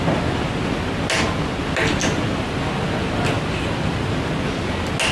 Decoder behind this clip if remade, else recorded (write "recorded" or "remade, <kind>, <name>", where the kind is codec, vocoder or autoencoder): recorded